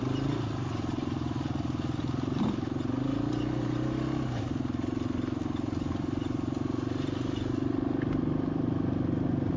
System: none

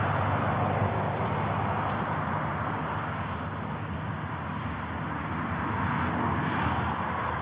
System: none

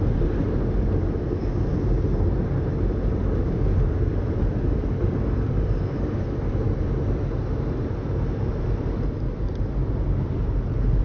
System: none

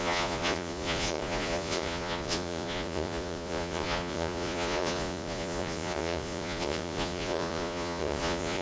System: vocoder, Vocos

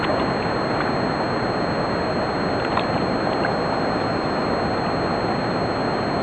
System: none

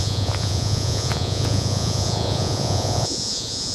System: vocoder, Vocos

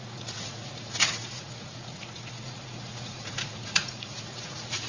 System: vocoder, Vocos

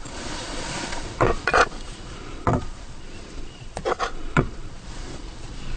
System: vocoder, Vocos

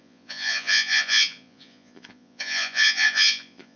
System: vocoder, Vocos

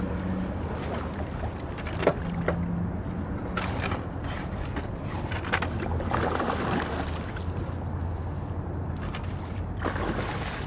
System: none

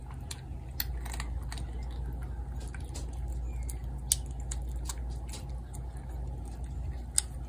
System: none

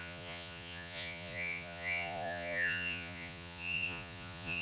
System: vocoder, Vocos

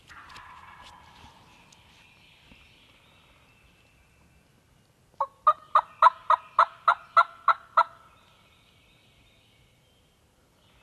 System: none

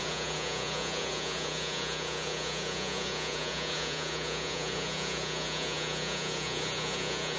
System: vocoder, Vocos